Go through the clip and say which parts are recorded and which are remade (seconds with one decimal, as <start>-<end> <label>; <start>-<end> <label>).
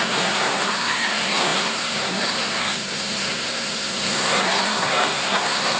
0.0-5.8 remade